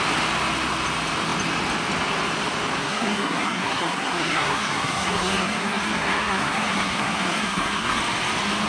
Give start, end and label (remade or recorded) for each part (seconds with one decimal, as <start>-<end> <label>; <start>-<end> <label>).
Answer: 0.0-2.8 recorded; 2.8-8.0 remade; 8.0-8.7 recorded